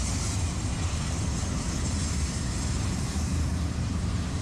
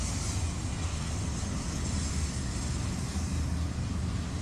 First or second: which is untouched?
second